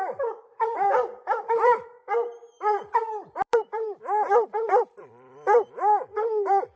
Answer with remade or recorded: remade